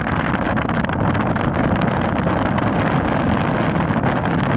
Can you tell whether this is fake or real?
real